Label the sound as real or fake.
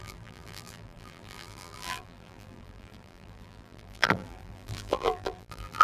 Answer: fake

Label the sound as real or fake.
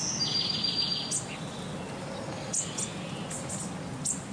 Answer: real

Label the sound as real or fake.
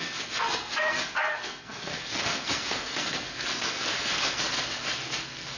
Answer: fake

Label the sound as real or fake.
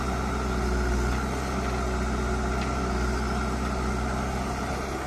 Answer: real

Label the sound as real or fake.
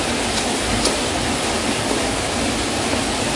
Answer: real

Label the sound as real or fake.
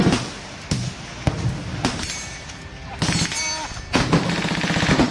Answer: real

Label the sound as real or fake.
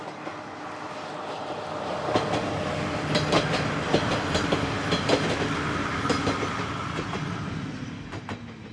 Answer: real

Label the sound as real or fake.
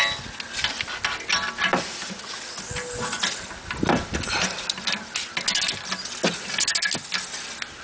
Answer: real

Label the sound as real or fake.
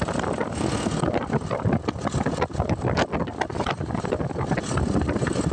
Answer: real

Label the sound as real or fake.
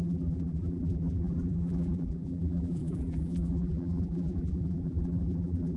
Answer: fake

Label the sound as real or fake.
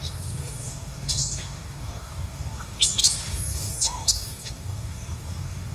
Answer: fake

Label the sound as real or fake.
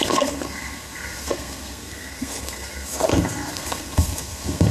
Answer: fake